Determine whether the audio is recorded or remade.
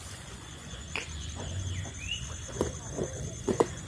remade